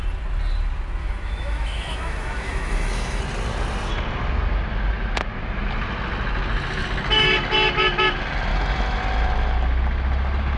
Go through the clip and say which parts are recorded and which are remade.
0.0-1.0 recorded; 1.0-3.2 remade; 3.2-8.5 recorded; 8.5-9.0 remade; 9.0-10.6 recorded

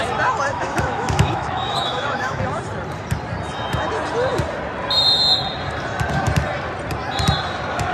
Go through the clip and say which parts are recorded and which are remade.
0.0-0.5 recorded; 0.5-2.4 remade; 2.4-7.9 recorded